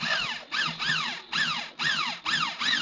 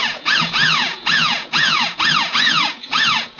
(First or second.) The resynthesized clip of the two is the second